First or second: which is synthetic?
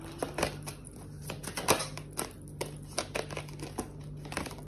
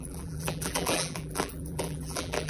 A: second